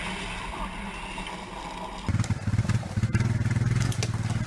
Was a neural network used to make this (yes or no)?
no